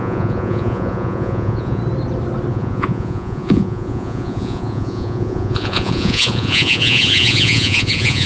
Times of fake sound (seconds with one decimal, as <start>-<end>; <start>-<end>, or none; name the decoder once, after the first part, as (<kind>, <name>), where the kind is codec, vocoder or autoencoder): 0.0-1.8 (vocoder, Vocos); 2.5-8.3